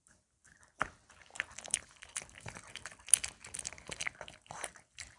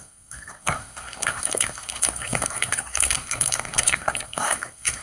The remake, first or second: second